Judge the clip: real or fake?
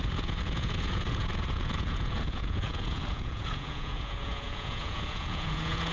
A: fake